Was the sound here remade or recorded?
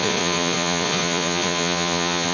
remade